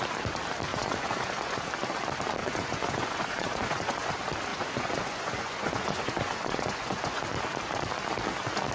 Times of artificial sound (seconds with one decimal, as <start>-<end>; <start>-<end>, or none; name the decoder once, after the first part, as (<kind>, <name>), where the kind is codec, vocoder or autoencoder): 0.7-1.6 (vocoder, Vocos); 2.4-4.1; 4.5-7.2